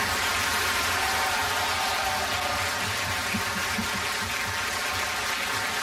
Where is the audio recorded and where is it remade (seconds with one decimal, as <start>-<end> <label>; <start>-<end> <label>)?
0.0-5.8 recorded